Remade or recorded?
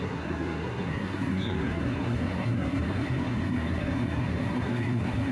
remade